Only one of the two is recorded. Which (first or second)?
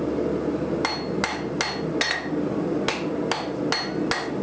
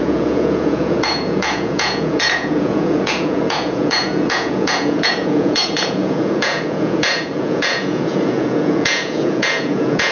first